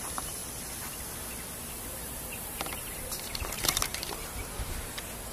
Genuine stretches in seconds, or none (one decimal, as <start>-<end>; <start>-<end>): 0.4-1.8